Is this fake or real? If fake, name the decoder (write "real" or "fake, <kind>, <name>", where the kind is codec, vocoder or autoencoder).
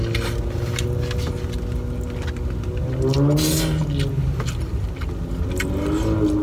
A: real